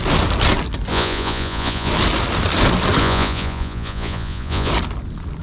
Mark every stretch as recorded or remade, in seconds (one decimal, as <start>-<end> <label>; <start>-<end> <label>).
0.0-0.9 recorded; 0.9-1.9 remade; 1.9-3.0 recorded; 3.0-4.7 remade; 4.7-5.4 recorded

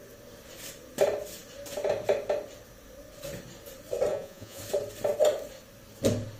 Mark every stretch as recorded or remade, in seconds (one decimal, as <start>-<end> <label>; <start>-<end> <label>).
0.0-4.1 recorded; 4.1-4.6 remade; 4.6-6.4 recorded

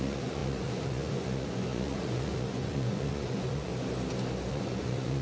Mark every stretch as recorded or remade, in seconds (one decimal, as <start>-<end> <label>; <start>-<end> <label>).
0.0-3.7 remade; 3.7-4.5 recorded; 4.5-5.2 remade

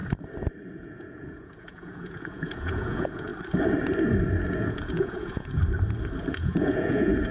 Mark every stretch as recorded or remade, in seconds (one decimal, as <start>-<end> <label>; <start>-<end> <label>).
0.0-0.7 recorded; 0.7-3.3 remade; 3.3-4.5 recorded; 4.5-5.6 remade; 5.6-6.3 recorded; 6.3-7.3 remade

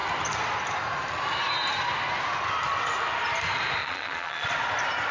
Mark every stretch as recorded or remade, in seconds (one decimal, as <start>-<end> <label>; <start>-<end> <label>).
0.0-3.8 recorded; 3.8-4.5 remade; 4.5-5.1 recorded

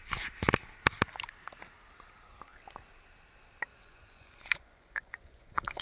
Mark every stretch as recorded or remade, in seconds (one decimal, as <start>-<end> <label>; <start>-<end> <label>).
0.0-3.7 recorded; 3.7-5.8 remade

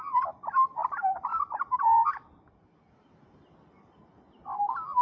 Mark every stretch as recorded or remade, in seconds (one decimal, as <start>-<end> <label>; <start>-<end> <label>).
0.0-5.0 recorded